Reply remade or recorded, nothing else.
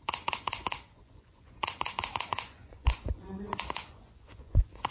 remade